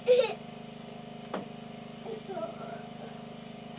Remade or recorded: recorded